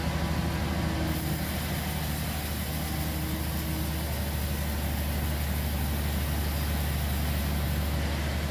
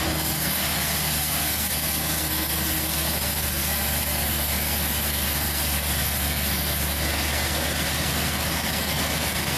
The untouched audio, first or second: first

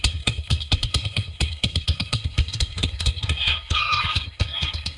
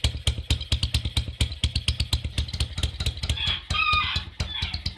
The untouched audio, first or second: second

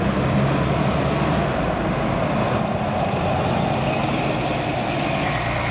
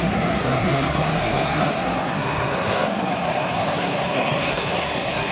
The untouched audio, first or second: first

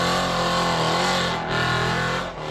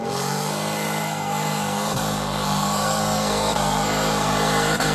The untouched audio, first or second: first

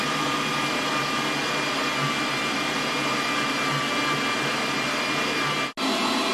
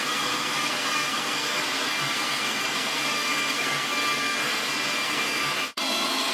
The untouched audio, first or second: first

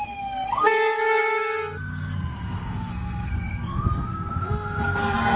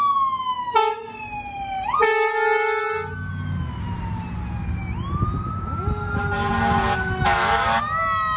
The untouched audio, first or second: second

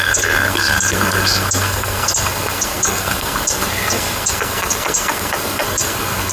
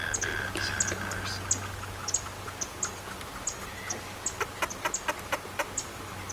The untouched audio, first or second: second